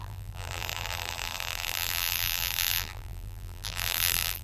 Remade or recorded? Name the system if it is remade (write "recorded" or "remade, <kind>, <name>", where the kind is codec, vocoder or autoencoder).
remade, vocoder, BigVGAN v2